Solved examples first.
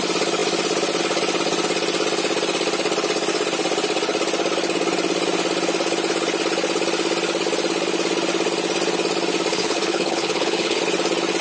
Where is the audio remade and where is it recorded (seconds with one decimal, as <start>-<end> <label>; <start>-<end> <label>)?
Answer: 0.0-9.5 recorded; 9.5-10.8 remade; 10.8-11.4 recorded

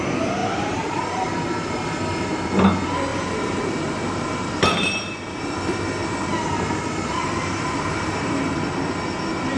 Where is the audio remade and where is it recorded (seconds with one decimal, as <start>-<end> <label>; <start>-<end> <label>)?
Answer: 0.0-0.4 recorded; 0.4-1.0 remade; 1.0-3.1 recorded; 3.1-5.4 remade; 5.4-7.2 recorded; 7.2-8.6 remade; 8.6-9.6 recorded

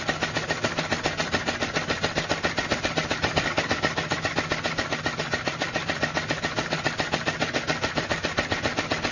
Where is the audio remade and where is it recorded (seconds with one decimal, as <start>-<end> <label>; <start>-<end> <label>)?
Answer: 0.0-9.1 recorded

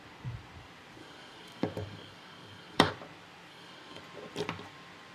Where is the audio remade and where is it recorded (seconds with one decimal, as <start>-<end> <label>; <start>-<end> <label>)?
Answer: 0.0-1.0 recorded; 1.0-2.9 remade; 2.9-3.5 recorded; 3.5-4.0 remade; 4.0-5.1 recorded

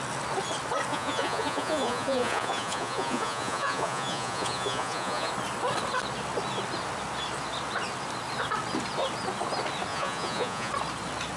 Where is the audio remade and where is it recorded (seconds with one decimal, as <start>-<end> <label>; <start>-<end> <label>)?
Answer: 0.0-0.9 recorded; 0.9-5.3 remade; 5.3-9.9 recorded; 9.9-10.7 remade; 10.7-11.4 recorded

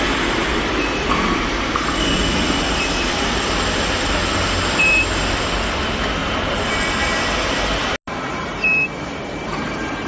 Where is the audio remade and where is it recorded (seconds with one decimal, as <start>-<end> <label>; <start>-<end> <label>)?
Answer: 0.0-6.2 recorded; 6.2-6.7 remade; 6.7-10.1 recorded

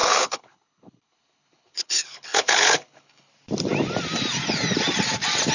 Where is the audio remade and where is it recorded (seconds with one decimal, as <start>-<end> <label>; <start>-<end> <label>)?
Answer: 0.0-3.3 remade; 3.3-5.5 recorded

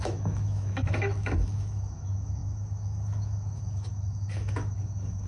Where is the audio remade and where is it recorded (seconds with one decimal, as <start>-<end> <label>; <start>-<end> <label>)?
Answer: 0.0-5.3 remade